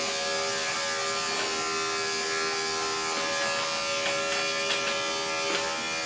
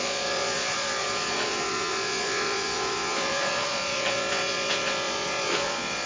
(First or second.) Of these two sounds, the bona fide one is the first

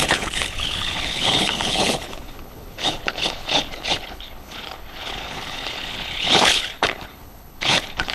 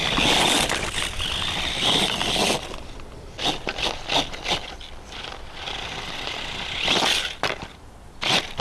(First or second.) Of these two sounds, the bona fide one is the second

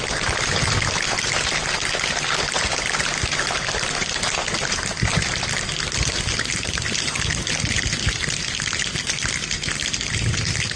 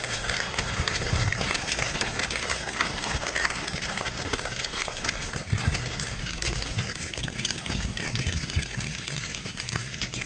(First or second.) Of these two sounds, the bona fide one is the first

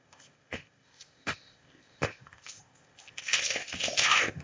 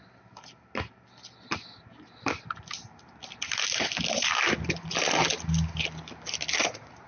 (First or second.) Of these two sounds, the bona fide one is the second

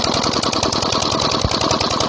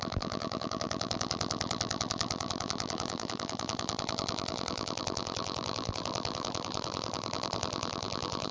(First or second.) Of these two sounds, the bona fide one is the first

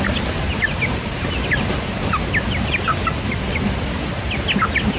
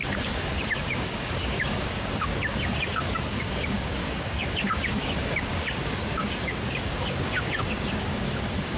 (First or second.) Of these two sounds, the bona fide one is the first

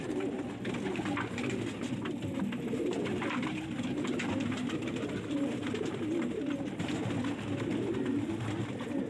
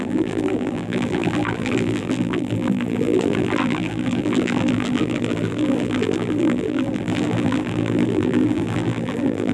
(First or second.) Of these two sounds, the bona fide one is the first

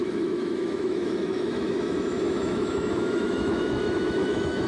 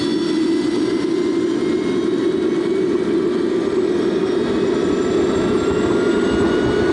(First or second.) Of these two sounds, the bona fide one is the second